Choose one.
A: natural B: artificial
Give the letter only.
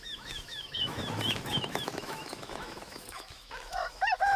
B